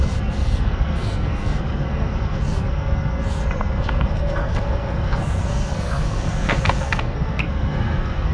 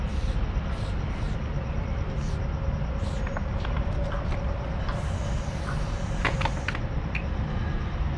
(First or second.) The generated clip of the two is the first